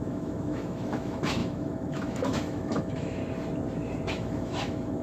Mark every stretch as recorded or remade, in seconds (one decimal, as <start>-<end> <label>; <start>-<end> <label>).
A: 0.0-3.2 remade; 3.2-4.1 recorded; 4.1-5.0 remade